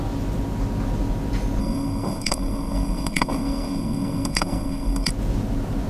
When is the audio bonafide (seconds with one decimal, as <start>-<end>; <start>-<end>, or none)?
0.0-1.6; 5.1-5.9